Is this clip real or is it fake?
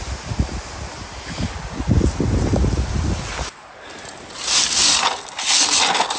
real